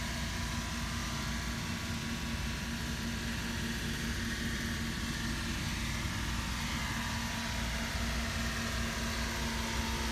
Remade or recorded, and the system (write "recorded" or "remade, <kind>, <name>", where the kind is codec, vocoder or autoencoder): recorded